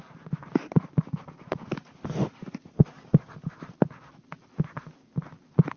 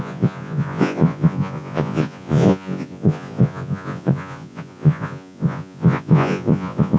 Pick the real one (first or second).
first